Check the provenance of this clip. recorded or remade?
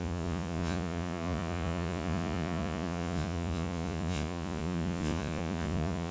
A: remade